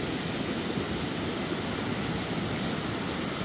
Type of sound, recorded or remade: recorded